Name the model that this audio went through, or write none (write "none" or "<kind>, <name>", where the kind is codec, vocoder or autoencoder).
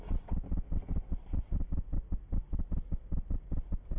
none